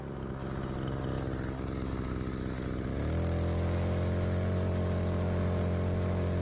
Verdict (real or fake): real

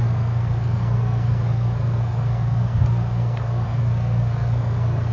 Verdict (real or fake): fake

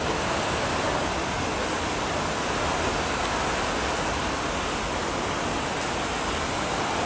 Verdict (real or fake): real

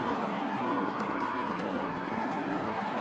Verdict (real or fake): fake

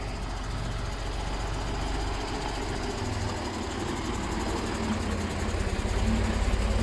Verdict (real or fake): real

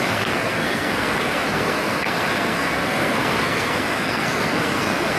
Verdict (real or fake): fake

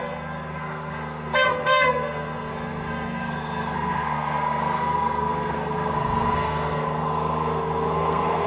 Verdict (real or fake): fake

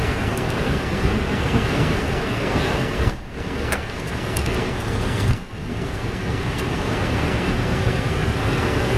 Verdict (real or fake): fake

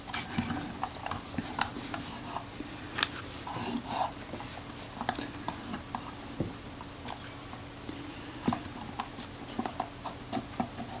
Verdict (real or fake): real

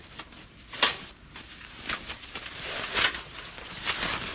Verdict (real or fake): real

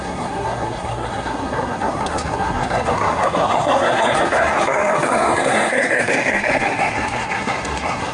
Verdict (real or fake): fake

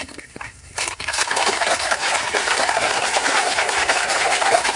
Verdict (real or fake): fake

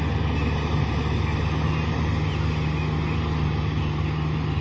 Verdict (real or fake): real